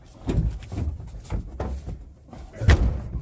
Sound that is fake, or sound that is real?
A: real